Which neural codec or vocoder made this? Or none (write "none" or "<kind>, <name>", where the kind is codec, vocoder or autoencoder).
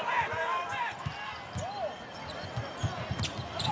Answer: none